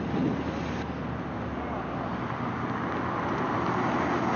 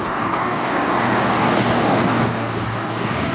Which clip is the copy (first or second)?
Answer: second